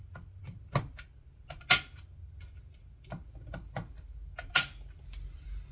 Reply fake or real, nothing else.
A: real